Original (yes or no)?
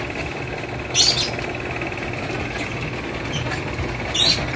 yes